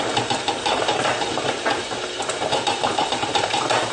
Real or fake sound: fake